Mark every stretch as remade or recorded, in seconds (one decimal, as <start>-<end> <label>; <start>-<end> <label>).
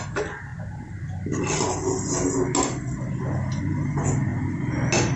0.0-5.2 recorded